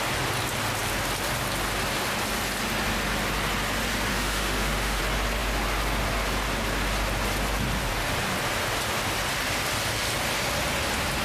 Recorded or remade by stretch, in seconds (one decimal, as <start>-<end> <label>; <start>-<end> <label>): 0.0-4.1 recorded; 4.1-5.0 remade; 5.0-11.2 recorded